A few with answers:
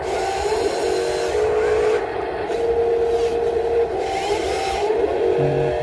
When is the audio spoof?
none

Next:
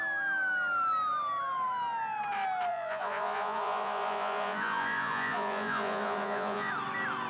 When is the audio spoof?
2.7-6.7 (vocoder, Vocos)

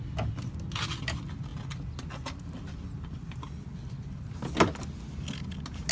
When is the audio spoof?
none

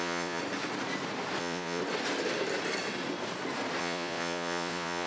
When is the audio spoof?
0.0-0.4 (vocoder, Vocos); 1.4-1.8; 3.8-5.1

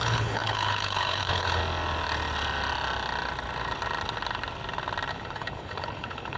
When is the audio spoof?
0.0-1.6 (codec, HILCodec); 5.1-6.4